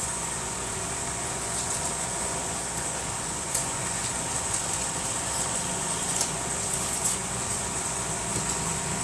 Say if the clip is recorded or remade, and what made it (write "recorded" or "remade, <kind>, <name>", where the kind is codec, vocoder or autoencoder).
remade, vocoder, Vocos